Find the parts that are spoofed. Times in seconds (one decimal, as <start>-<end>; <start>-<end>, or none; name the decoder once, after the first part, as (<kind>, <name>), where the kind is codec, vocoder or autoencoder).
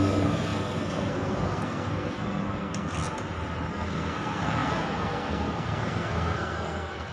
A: 0.0-3.0 (codec, SNAC); 3.7-7.1